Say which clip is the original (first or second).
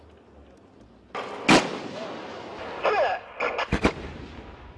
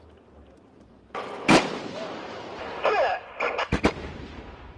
first